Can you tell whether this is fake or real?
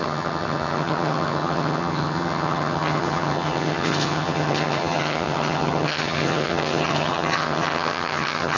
fake